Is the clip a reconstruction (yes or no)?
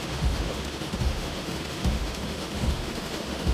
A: yes